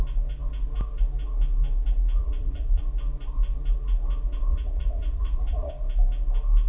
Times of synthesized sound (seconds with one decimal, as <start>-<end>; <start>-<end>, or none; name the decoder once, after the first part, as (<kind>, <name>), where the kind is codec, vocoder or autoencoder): 2.2-2.8 (vocoder, Vocos); 4.5-5.7